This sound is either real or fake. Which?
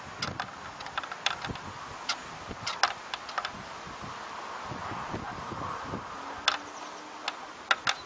real